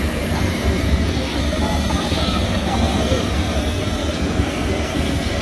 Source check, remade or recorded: remade